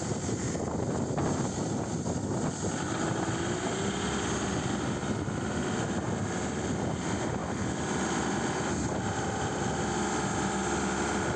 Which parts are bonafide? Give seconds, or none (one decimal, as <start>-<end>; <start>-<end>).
0.0-11.4